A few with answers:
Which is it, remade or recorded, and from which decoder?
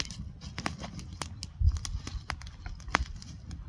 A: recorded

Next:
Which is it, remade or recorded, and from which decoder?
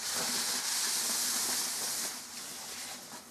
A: recorded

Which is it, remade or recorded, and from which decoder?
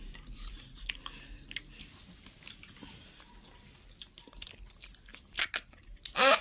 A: recorded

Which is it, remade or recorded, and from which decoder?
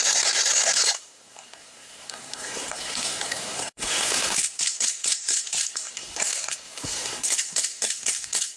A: remade, codec, SNAC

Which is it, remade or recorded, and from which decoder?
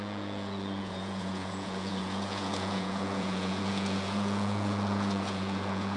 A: remade, vocoder, Vocos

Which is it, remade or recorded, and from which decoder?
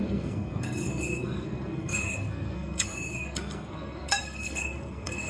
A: remade, codec, SNAC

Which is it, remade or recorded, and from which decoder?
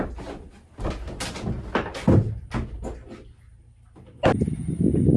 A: recorded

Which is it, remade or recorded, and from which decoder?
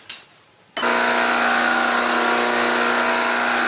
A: recorded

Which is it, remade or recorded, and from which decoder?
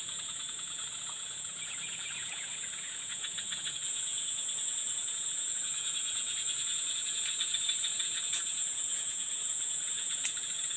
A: remade, vocoder, Vocos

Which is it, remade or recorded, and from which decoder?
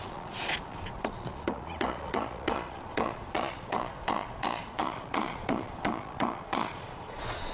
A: remade, vocoder, Vocos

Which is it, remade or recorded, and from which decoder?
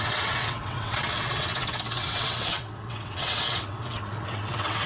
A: remade, vocoder, WaveNeXt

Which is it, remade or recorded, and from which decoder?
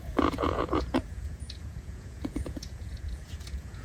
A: remade, vocoder, Vocos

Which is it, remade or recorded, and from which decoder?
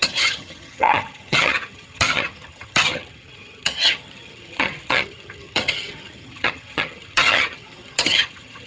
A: remade, vocoder, HiFi-GAN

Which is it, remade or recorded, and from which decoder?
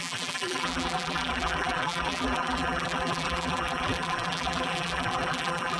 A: remade, vocoder, BigVGAN v2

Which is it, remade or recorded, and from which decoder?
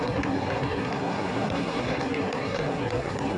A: remade, codec, SNAC